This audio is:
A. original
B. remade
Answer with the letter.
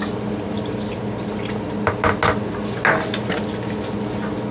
A